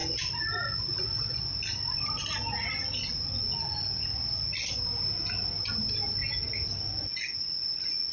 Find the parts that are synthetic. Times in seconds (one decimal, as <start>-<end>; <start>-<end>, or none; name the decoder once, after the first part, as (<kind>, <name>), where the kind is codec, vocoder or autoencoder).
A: none